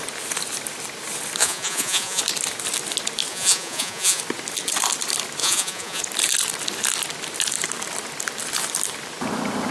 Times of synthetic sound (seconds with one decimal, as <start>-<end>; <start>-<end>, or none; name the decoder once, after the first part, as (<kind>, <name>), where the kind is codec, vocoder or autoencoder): 1.4-2.2 (vocoder, Vocos); 3.3-4.2; 5.4-6.0